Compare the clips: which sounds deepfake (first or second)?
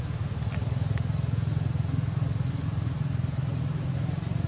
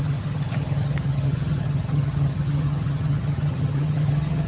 second